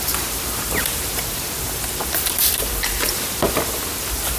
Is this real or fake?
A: fake